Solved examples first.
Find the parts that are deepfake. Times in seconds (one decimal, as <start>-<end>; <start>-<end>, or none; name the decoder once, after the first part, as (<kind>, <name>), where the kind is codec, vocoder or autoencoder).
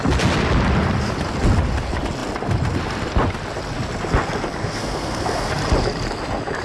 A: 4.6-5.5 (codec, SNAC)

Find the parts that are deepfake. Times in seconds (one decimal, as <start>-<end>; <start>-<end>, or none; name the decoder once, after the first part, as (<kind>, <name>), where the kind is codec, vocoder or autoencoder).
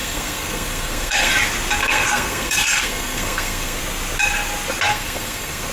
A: 0.0-1.3 (codec, SNAC); 1.8-3.8; 4.9-5.7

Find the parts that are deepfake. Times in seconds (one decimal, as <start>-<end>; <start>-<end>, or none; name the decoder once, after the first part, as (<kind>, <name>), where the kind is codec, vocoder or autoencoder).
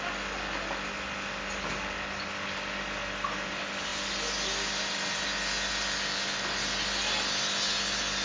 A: none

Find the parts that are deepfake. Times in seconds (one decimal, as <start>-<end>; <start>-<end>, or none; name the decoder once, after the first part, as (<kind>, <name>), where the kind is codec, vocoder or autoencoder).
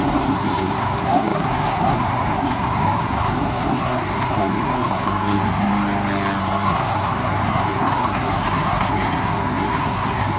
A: 0.0-5.7 (codec, SNAC); 6.4-10.4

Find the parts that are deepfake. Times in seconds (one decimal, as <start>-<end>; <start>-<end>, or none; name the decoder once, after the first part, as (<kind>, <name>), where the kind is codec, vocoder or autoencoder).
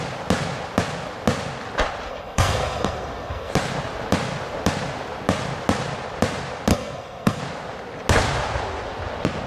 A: 2.1-3.5 (codec, SNAC); 6.7-7.4